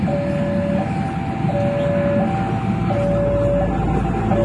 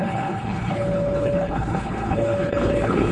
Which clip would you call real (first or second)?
first